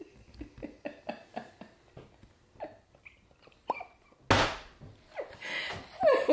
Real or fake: real